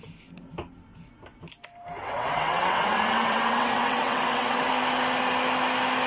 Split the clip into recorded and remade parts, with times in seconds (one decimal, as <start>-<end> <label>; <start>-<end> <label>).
0.0-2.0 recorded; 2.0-4.7 remade; 4.7-6.1 recorded